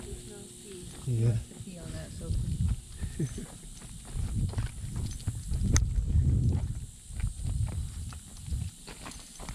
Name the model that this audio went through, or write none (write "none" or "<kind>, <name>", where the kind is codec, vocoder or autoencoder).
none